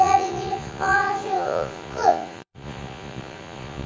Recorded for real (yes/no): no